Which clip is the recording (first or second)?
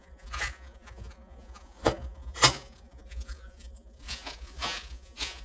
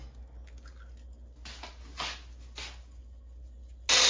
second